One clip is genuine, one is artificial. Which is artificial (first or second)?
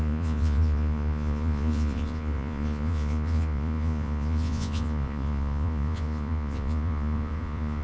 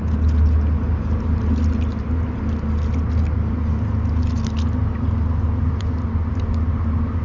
first